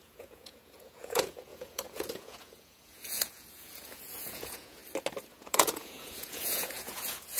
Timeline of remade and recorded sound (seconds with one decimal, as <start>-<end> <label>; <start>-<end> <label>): 0.0-4.8 remade; 4.8-5.3 recorded; 5.3-7.4 remade

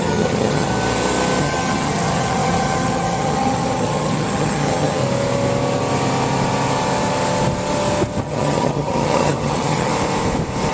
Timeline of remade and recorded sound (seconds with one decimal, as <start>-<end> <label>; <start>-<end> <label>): 0.0-0.7 remade; 0.7-1.4 recorded; 1.4-5.0 remade; 5.0-8.2 recorded; 8.2-9.9 remade; 9.9-10.7 recorded

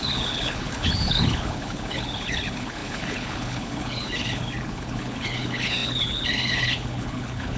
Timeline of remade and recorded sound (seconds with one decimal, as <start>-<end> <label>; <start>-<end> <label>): 0.0-7.6 remade